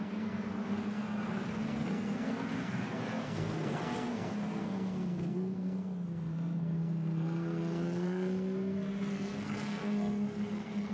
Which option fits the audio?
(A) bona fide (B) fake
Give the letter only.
B